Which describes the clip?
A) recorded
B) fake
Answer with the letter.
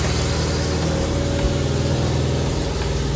A